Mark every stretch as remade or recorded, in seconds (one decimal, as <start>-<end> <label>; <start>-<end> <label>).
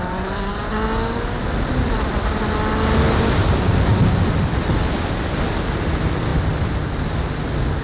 0.0-7.8 recorded